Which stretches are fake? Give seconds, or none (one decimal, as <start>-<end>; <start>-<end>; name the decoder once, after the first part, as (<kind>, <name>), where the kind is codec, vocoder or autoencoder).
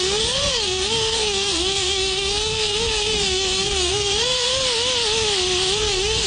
0.0-4.5 (codec, SNAC); 5.8-6.3